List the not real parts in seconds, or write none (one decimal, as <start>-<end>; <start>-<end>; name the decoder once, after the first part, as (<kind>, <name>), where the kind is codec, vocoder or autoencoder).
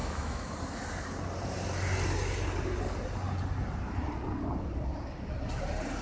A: 0.0-0.5 (autoencoder, DAC-VAE)